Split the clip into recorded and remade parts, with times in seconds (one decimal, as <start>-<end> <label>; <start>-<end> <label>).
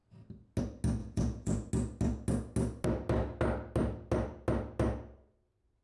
0.0-1.0 recorded; 1.0-1.7 remade; 1.7-5.8 recorded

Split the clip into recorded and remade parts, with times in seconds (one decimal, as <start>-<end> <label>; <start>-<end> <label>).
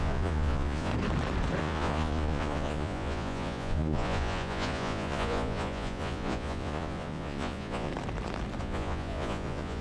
0.0-0.9 remade; 0.9-1.6 recorded; 1.6-7.9 remade; 7.9-8.6 recorded; 8.6-9.8 remade